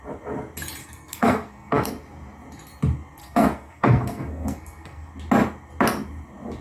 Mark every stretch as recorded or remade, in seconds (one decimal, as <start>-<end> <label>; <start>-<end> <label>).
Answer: 0.0-0.8 recorded; 0.8-1.9 remade; 1.9-3.2 recorded; 3.2-5.1 remade; 5.1-6.6 recorded